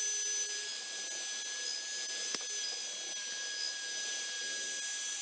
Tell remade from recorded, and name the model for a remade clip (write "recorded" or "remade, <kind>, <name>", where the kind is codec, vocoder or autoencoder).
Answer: recorded